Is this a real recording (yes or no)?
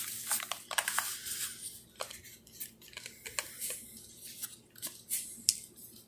yes